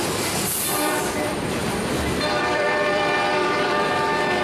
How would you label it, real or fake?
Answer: fake